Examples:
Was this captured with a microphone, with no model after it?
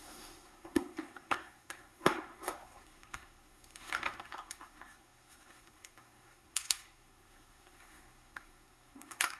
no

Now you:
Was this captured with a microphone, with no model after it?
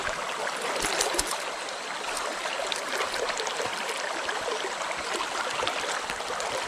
yes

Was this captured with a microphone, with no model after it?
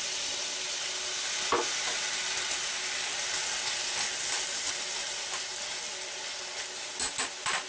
yes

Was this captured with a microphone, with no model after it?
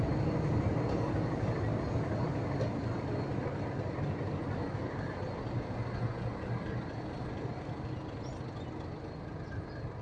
yes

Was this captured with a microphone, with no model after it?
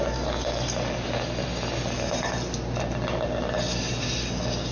yes